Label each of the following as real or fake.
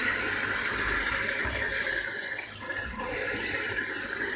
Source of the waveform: real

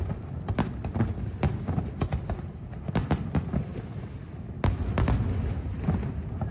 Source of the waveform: real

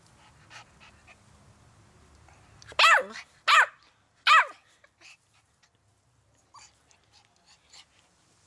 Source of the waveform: real